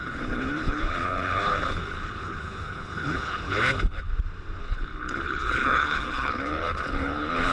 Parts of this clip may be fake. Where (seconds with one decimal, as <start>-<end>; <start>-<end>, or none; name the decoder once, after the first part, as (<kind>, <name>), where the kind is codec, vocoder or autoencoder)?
0.0-4.1 (codec, HILCodec); 4.6-7.5